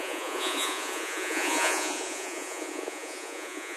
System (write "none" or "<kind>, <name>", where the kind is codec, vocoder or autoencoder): vocoder, Vocos